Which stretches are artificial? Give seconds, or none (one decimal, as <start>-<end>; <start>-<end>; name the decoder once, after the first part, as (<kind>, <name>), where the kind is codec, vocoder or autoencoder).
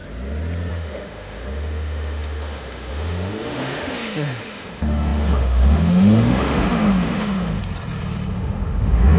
0.7-7.6 (autoencoder, DAC-VAE); 8.3-9.2